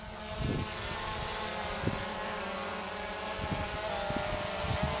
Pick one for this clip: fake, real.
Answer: real